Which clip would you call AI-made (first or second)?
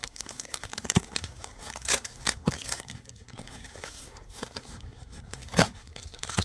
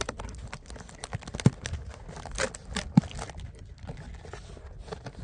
first